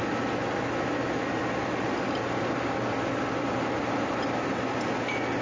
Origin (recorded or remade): recorded